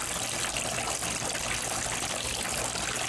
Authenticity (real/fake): real